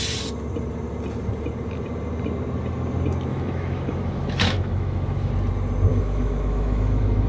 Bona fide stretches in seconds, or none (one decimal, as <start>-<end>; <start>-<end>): 0.0-3.3; 5.3-5.9